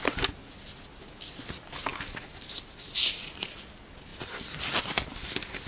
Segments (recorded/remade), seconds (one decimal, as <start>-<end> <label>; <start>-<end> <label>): 0.0-4.1 recorded; 4.1-4.8 remade; 4.8-5.7 recorded